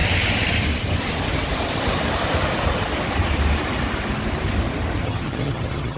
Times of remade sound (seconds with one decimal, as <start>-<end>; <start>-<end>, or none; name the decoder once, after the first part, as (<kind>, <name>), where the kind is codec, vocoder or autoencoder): 5.0-6.0 (vocoder, HiFi-GAN)

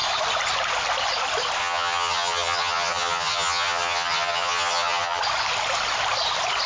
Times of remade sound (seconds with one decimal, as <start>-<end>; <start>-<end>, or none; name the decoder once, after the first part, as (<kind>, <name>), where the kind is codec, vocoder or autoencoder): 1.6-5.2 (vocoder, HiFi-GAN)